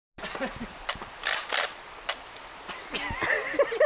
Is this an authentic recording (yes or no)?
yes